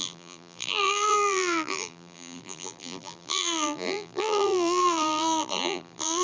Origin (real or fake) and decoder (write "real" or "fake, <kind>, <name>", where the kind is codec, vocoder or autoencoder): fake, vocoder, BigVGAN v2